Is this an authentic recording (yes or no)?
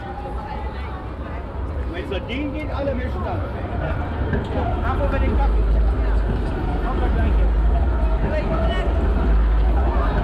yes